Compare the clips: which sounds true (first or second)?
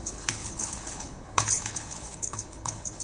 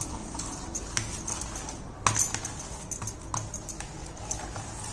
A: second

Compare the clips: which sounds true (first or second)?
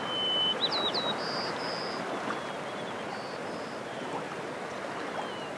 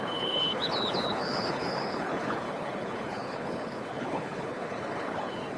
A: first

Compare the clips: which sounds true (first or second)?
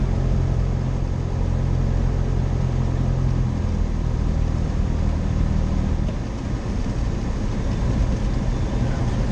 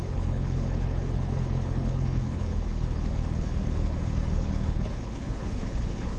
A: first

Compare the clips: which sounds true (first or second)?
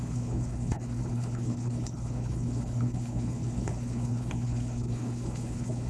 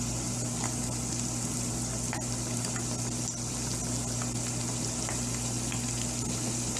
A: second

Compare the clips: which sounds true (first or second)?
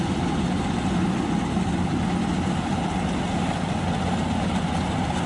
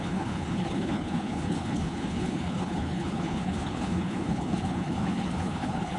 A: first